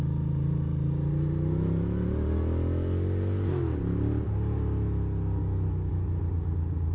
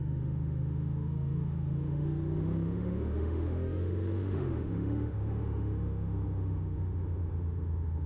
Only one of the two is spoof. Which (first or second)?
second